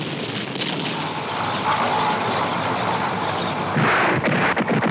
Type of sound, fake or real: real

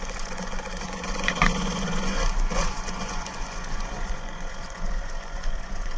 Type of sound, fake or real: fake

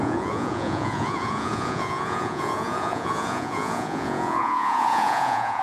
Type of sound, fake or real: fake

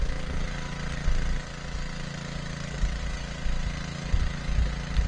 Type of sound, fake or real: real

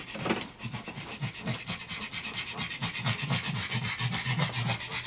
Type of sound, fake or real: real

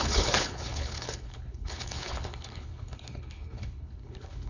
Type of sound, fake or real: fake